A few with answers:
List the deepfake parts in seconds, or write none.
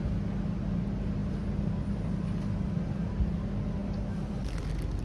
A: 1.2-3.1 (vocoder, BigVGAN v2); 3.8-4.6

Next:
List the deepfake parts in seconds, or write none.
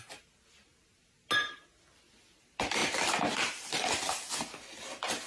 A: 2.8-5.3 (vocoder, BigVGAN v2)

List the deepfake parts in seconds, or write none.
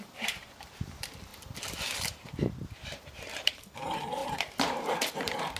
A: 0.0-1.3 (vocoder, BigVGAN v2); 2.0-5.6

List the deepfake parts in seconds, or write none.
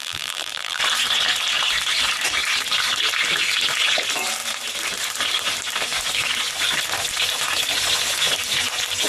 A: 0.0-0.8 (vocoder, BigVGAN v2)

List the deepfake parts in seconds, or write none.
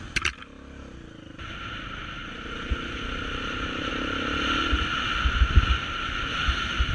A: 2.2-3.9 (vocoder, BigVGAN v2)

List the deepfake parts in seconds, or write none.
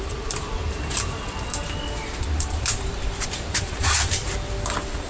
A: 0.0-0.6 (vocoder, BigVGAN v2); 2.2-4.2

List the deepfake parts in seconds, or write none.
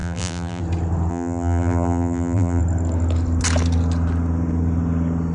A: 0.0-0.6 (vocoder, BigVGAN v2); 1.1-2.6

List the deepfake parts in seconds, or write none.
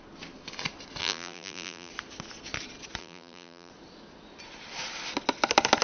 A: 1.0-1.9 (vocoder, BigVGAN v2); 3.0-3.7